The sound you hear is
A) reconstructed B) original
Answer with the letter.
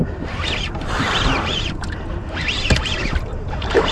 A